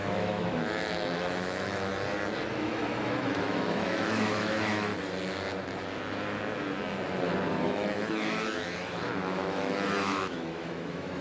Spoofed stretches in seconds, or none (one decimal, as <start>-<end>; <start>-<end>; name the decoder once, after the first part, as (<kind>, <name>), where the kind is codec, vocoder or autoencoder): 0.0-1.9 (autoencoder, DAC-VAE); 2.5-4.9; 7.5-11.2